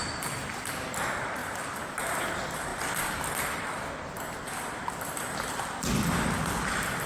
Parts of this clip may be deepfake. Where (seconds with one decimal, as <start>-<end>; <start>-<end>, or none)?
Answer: 0.0-1.4; 2.0-2.7; 4.0-7.1